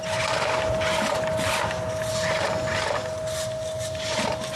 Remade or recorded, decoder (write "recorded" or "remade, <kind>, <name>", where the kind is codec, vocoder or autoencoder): recorded